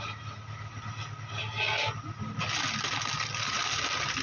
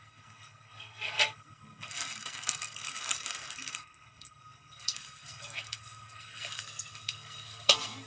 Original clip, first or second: first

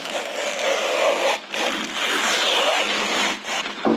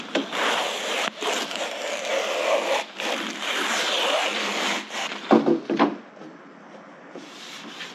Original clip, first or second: first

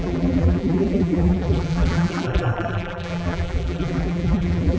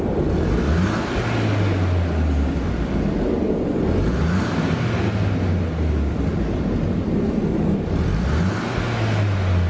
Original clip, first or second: second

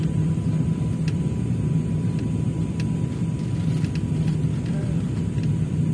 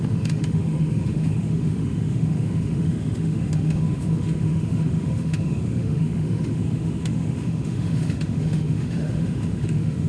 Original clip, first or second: first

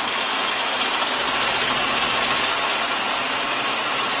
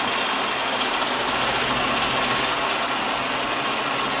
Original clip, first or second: second